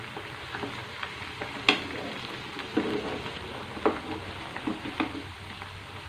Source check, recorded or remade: recorded